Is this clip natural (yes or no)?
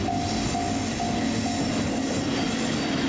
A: yes